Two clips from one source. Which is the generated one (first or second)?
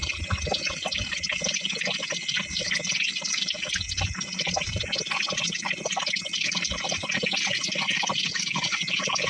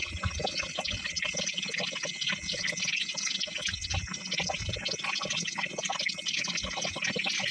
first